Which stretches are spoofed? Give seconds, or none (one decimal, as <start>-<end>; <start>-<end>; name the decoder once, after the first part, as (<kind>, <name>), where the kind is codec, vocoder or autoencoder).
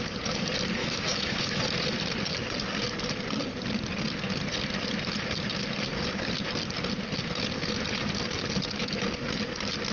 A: 0.8-1.6 (autoencoder, DAC-VAE)